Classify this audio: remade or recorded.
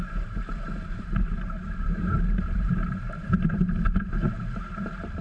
remade